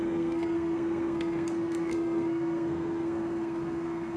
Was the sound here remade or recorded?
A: remade